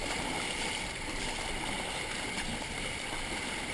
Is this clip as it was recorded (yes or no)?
no